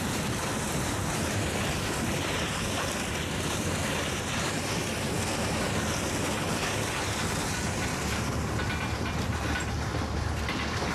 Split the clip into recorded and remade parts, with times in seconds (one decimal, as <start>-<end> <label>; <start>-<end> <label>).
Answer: 0.0-5.3 remade; 5.3-10.5 recorded; 10.5-10.9 remade